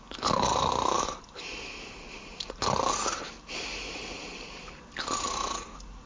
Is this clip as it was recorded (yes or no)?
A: yes